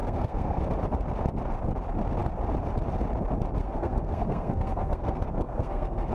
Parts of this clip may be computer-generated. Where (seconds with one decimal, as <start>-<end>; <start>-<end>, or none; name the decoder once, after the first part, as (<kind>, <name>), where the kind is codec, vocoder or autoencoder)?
0.0-0.6 (codec, SNAC); 3.6-6.1